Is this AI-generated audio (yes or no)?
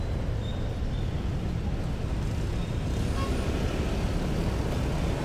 no